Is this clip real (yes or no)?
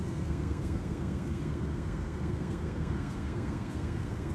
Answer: no